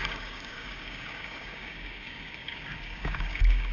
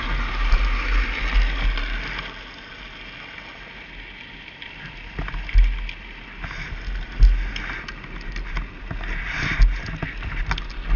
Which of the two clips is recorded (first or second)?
second